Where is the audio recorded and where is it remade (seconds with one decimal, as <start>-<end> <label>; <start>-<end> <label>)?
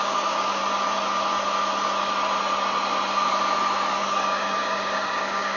0.0-0.6 remade; 0.6-4.0 recorded; 4.0-5.6 remade